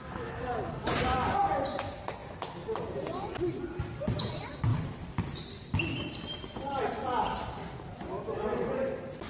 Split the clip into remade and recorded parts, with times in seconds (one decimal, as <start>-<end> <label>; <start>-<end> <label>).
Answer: 0.0-0.5 recorded; 0.5-1.0 remade; 1.0-9.3 recorded